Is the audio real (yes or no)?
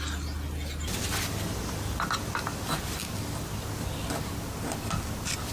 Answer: yes